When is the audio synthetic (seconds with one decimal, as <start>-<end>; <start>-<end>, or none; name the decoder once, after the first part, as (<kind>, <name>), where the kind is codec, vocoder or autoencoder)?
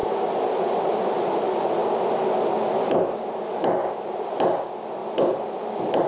3.8-4.4 (vocoder, BigVGAN v2)